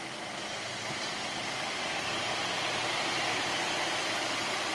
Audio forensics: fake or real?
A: real